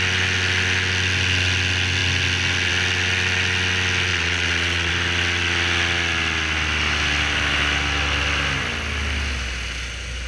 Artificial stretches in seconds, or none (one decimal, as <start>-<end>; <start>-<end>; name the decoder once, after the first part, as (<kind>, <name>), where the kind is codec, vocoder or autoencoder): 4.1-4.9 (vocoder, WaveNeXt)